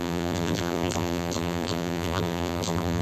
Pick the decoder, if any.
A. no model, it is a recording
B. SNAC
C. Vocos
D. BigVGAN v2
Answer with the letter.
D